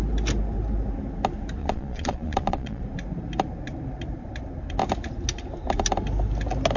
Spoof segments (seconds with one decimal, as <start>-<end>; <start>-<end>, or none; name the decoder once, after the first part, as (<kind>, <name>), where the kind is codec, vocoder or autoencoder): 1.6-2.8 (vocoder, Vocos)